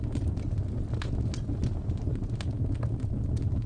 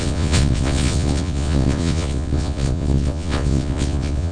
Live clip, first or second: first